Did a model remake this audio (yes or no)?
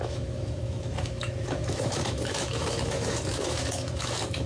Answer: yes